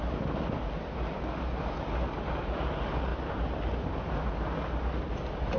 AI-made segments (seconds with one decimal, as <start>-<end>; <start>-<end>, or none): none